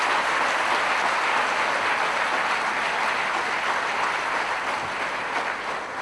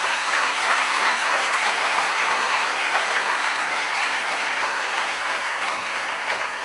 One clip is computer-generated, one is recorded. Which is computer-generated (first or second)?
second